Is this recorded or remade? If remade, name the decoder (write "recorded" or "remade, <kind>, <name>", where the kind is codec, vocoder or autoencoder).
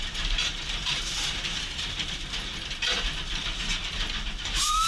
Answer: remade, vocoder, BigVGAN v2